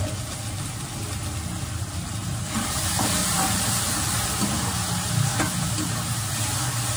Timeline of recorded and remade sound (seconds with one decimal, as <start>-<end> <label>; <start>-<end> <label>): 0.0-3.2 recorded; 3.2-4.7 remade; 4.7-5.3 recorded; 5.3-6.2 remade; 6.2-7.0 recorded